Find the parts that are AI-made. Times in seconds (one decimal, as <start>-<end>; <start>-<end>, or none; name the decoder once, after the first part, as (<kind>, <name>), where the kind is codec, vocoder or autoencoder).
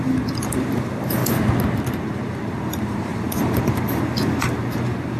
0.0-1.2 (vocoder, BigVGAN v2); 2.0-5.2